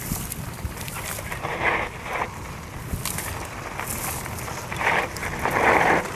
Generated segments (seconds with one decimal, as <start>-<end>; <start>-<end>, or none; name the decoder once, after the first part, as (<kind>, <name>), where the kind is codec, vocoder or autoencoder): 0.0-1.5 (vocoder, BigVGAN v2); 3.7-6.1